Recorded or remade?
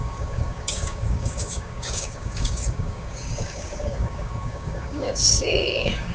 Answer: remade